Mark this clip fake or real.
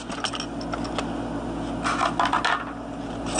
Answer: real